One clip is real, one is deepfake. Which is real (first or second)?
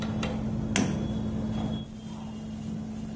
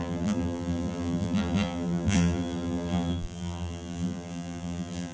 first